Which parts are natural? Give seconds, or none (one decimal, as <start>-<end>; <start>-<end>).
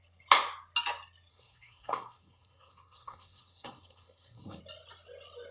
0.0-1.3; 4.6-5.5